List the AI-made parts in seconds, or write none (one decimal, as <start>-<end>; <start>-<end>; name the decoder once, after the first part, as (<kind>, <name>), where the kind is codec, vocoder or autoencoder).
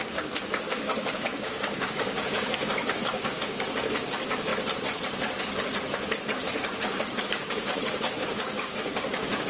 0.0-4.5 (codec, DAC); 7.2-9.5